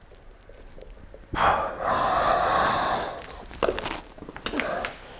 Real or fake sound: real